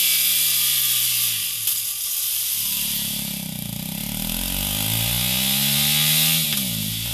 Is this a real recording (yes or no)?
yes